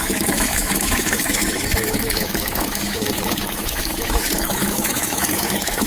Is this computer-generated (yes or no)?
yes